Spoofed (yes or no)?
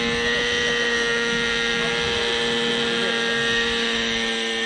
no